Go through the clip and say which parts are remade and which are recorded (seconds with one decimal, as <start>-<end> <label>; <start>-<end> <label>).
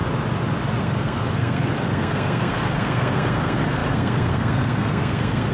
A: 0.0-0.8 recorded; 0.8-5.5 remade